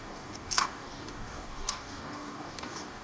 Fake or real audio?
fake